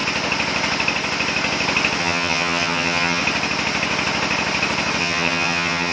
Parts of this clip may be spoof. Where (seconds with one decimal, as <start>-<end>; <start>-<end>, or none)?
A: 2.0-3.2; 5.0-5.9